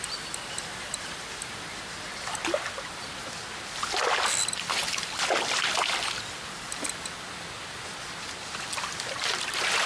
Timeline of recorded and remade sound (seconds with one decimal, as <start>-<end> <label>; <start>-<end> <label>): 0.0-9.9 recorded